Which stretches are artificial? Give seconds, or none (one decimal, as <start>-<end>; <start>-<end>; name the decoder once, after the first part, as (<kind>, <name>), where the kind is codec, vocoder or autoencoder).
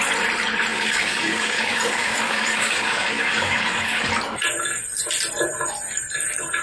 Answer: 0.7-4.1 (codec, DAC)